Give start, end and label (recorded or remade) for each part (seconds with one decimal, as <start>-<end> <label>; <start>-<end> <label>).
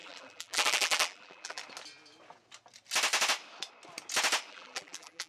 0.0-1.6 remade; 1.6-4.5 recorded; 4.5-5.3 remade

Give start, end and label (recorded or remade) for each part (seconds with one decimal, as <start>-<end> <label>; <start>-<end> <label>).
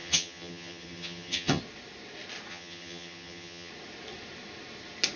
0.0-1.6 remade; 1.6-2.5 recorded; 2.5-3.7 remade; 3.7-5.2 recorded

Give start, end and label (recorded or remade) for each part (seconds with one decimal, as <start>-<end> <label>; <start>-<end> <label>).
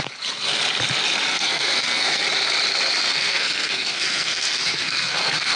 0.0-1.3 recorded; 1.3-2.2 remade; 2.2-3.1 recorded; 3.1-5.5 remade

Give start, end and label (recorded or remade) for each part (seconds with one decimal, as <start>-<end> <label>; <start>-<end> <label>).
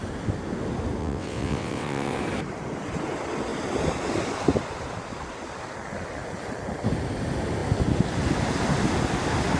0.0-1.0 recorded; 1.0-2.2 remade; 2.2-9.6 recorded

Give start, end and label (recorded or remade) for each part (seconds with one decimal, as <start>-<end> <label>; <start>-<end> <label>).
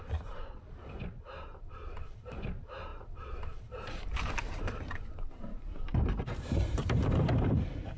0.0-8.0 remade